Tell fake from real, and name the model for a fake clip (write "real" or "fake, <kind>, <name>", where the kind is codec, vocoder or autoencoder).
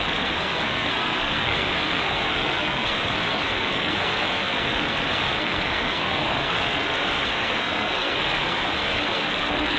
fake, codec, SNAC